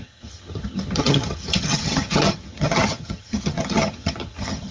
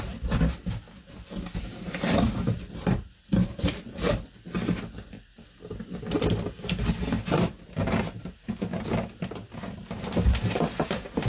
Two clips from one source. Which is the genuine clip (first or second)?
second